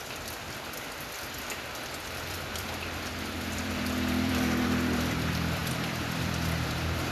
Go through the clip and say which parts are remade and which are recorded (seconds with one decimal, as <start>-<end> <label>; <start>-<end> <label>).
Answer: 0.0-7.1 remade